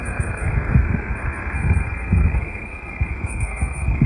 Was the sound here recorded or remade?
remade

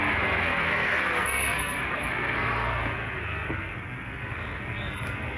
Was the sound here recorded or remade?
remade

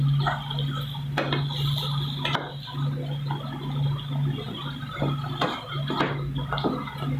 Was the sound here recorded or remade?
recorded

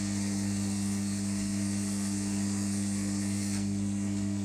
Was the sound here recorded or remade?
remade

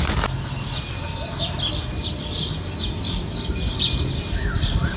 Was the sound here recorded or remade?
recorded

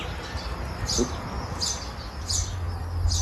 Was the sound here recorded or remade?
recorded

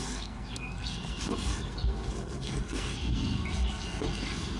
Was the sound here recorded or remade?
remade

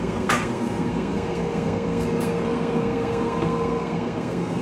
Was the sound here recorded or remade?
remade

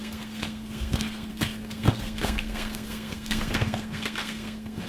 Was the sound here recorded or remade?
remade